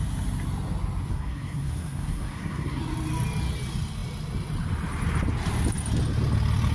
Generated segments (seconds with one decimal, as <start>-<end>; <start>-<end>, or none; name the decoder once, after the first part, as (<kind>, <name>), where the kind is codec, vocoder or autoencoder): 1.1-2.8 (codec, SNAC)